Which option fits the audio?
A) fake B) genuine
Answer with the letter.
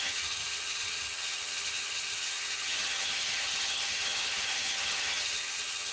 A